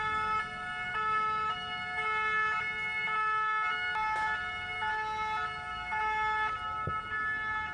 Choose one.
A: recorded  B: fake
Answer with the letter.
A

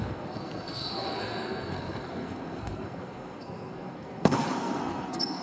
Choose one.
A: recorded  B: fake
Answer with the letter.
B